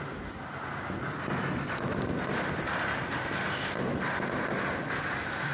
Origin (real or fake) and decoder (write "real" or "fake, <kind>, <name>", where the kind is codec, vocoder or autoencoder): real